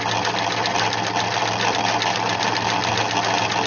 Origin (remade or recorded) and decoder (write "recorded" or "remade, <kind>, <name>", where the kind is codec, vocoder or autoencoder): recorded